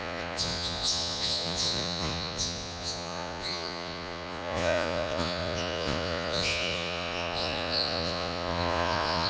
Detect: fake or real fake